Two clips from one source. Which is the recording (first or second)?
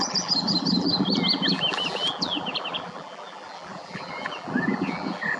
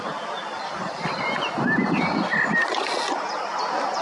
second